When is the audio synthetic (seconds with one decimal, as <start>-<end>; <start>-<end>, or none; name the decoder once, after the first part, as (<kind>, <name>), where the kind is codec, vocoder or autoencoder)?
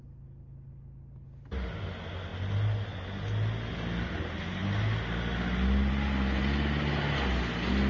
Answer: none